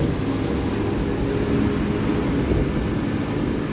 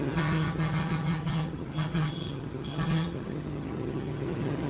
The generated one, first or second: second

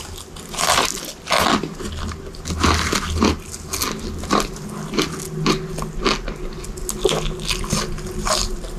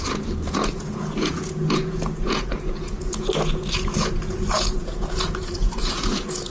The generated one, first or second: second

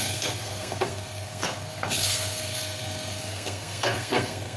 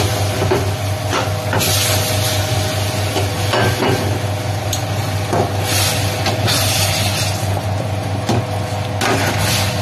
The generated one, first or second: first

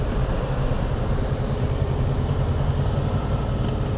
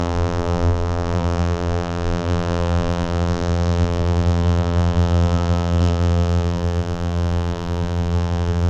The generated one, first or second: second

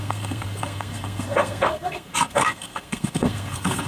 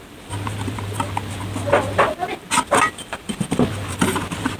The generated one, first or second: first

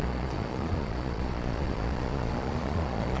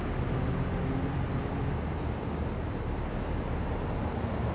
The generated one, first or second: first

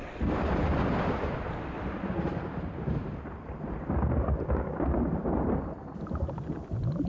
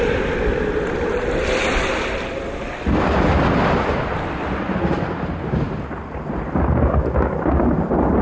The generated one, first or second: first